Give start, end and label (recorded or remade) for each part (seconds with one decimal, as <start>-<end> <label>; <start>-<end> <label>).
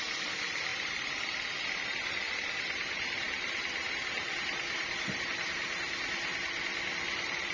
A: 0.0-0.7 recorded; 0.7-5.2 remade; 5.2-7.5 recorded